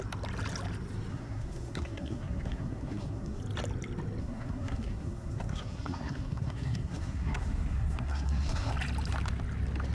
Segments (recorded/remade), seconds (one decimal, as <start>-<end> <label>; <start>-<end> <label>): 0.0-1.1 recorded; 1.1-3.4 remade; 3.4-4.2 recorded; 4.2-8.7 remade; 8.7-9.9 recorded